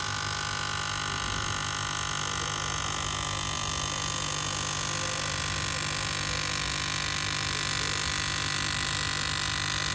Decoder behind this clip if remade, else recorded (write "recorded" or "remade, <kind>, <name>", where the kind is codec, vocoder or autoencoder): recorded